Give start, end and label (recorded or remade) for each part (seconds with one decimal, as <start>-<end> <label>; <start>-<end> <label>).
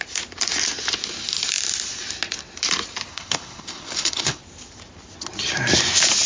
0.0-3.1 recorded; 3.1-4.4 remade; 4.4-6.3 recorded